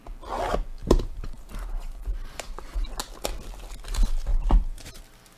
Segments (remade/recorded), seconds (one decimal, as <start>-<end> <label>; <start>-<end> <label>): 0.0-0.8 recorded; 0.8-1.7 remade; 1.7-2.1 recorded; 2.1-3.0 remade; 3.0-4.3 recorded; 4.3-5.0 remade; 5.0-5.4 recorded